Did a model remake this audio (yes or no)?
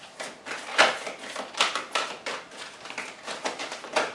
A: no